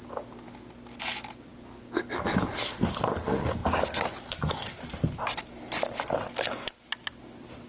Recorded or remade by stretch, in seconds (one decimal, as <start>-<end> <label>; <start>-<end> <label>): 0.0-7.7 recorded